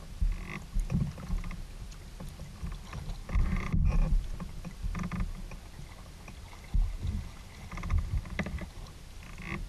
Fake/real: real